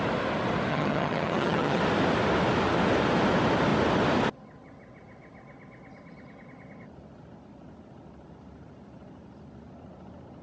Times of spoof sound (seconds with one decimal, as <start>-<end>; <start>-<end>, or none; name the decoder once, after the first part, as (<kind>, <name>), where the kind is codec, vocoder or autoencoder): 0.7-1.8 (vocoder, HiFi-GAN)